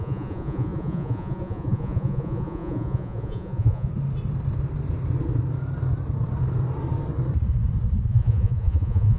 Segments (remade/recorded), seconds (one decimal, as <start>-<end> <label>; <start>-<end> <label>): 0.0-3.9 remade; 3.9-8.1 recorded; 8.1-9.2 remade